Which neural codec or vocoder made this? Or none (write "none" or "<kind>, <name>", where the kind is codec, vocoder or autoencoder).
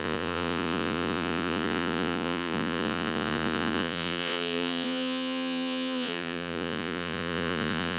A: vocoder, Vocos